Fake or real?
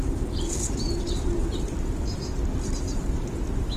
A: real